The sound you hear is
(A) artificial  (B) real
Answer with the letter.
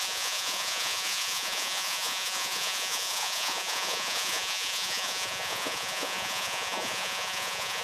A